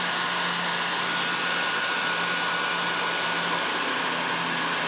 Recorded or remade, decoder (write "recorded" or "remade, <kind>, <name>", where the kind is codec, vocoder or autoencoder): recorded